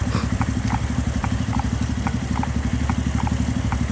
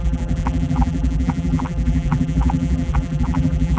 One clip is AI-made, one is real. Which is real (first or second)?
first